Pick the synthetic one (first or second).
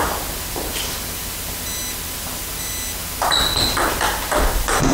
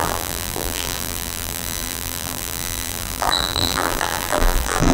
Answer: second